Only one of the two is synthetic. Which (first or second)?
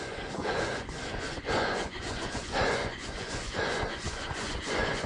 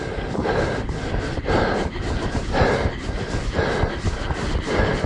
first